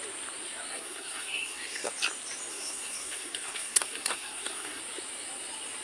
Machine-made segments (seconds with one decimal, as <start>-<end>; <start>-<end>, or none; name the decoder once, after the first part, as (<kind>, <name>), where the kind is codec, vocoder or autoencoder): 0.7-1.9 (codec, SNAC); 2.5-4.8